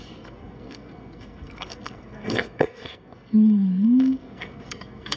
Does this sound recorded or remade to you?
remade